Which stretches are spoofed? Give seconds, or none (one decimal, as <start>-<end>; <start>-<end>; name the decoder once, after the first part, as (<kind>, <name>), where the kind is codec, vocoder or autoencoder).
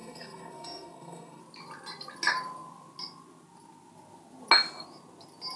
0.0-1.4 (codec, SNAC)